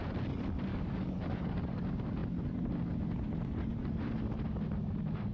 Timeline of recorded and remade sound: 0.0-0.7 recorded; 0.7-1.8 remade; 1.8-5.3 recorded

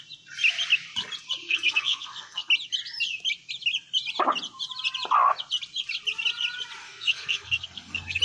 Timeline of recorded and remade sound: 0.0-1.4 recorded; 1.4-2.5 remade; 2.5-6.8 recorded; 6.8-8.2 remade

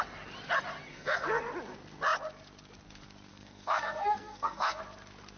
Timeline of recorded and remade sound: 0.0-0.9 recorded; 0.9-1.4 remade; 1.4-3.3 recorded; 3.3-4.8 remade; 4.8-5.4 recorded

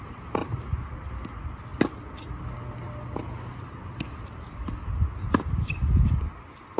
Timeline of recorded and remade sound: 0.0-6.8 recorded